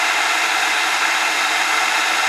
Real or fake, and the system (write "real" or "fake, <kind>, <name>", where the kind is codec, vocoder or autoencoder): real